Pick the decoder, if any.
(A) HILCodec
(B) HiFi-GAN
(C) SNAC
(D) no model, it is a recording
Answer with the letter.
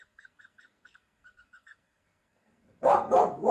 C